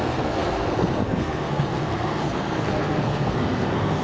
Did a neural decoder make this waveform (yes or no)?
yes